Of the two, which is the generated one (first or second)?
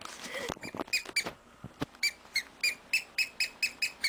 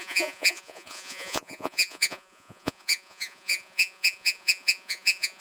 second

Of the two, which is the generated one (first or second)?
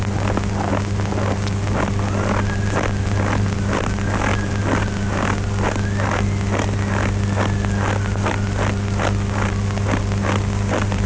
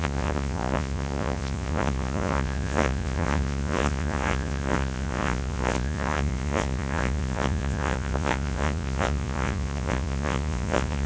second